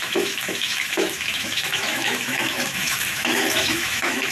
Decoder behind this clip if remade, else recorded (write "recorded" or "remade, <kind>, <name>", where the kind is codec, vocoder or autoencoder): remade, autoencoder, DAC-VAE